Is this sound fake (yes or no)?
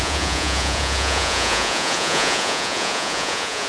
yes